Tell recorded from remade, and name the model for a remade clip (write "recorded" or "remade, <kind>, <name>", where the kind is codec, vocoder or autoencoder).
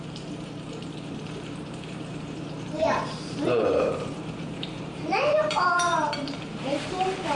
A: remade, vocoder, BigVGAN v2